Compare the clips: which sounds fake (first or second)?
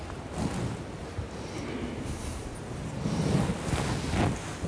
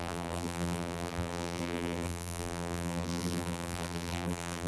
second